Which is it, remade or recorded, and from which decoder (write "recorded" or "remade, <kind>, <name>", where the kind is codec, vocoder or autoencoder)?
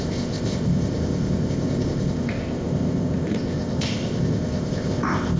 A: remade, codec, ZipCodec